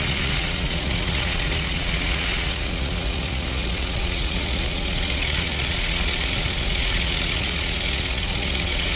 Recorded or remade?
remade